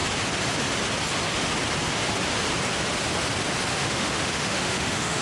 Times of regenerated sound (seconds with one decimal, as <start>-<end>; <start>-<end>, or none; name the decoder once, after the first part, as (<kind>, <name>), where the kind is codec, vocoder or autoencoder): 3.7-5.2 (autoencoder, DAC-VAE)